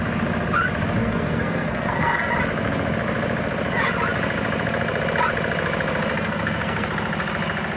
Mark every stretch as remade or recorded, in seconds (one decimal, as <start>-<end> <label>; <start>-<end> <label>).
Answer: 0.0-1.0 recorded; 1.0-2.3 remade; 2.3-6.1 recorded; 6.1-6.9 remade; 6.9-7.8 recorded